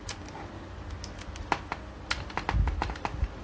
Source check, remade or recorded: recorded